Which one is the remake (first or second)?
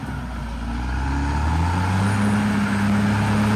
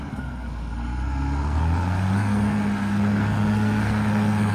second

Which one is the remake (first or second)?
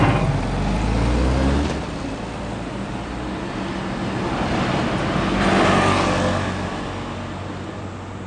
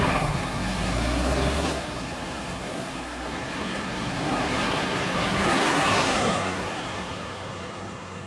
second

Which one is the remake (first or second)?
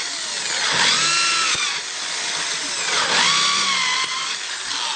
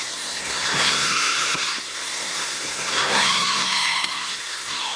second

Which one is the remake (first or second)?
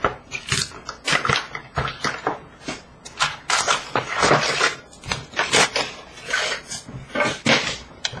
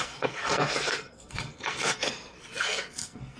second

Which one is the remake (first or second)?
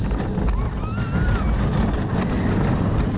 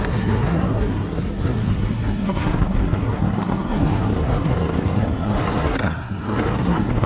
second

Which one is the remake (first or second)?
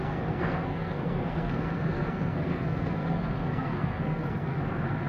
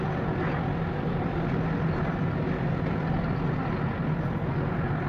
first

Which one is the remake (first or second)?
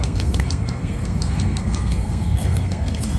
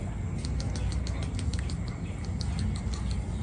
first